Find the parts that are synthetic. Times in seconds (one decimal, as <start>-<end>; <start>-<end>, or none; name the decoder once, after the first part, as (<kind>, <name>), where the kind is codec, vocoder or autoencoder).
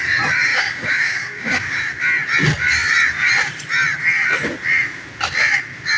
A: 0.5-1.8 (codec, DAC)